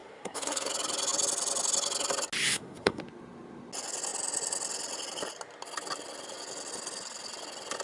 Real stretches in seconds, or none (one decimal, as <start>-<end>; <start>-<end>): 0.7-2.4; 3.0-7.8